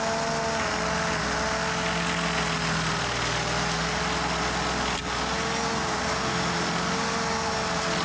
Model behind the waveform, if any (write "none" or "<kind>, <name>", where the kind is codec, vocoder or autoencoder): none